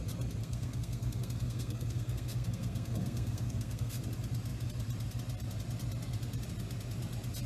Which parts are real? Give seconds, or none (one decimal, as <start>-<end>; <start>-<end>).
0.0-0.4; 4.0-7.5